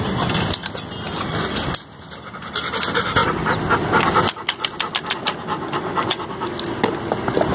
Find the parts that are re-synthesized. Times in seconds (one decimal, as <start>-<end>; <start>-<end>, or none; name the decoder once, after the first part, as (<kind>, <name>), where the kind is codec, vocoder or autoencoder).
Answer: none